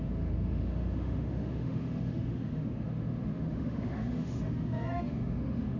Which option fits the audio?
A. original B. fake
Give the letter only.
B